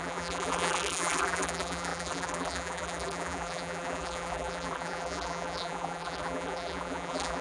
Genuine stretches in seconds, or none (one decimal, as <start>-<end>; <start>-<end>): none